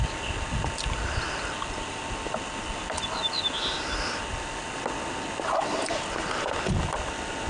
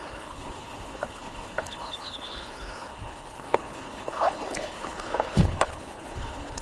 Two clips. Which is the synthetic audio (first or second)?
second